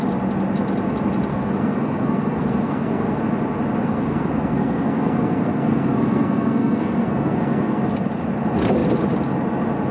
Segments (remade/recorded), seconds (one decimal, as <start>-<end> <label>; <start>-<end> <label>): 0.0-1.3 recorded; 1.3-3.2 remade; 3.2-3.8 recorded; 3.8-7.8 remade; 7.8-9.9 recorded